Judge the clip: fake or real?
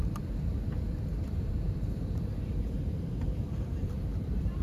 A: fake